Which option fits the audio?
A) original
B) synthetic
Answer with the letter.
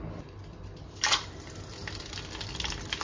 A